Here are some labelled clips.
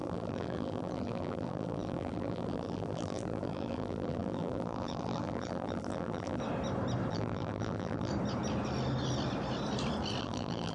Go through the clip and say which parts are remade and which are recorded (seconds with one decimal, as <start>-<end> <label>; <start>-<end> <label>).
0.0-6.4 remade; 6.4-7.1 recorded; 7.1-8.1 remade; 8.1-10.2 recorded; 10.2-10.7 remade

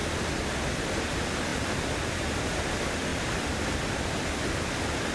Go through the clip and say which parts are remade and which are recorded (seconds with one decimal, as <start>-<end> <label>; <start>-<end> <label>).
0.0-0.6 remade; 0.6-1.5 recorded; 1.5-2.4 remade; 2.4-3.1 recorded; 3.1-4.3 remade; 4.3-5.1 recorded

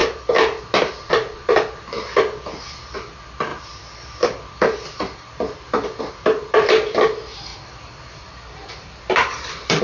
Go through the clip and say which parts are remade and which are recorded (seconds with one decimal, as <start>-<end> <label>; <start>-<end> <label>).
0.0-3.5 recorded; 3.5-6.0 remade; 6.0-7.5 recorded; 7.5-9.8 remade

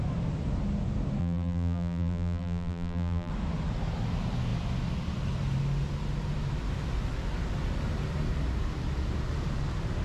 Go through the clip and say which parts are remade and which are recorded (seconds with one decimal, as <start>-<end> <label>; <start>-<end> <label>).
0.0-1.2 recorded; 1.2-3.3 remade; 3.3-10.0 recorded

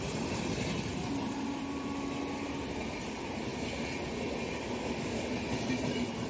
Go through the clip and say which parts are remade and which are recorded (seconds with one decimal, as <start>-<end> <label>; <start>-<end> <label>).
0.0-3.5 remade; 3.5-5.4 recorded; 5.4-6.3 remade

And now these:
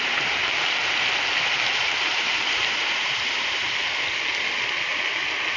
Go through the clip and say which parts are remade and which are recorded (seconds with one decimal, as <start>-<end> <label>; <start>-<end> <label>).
0.0-0.4 remade; 0.4-1.7 recorded; 1.7-3.6 remade; 3.6-5.6 recorded

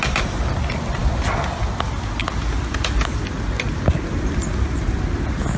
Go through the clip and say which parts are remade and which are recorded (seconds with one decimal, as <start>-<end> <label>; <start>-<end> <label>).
0.0-5.6 recorded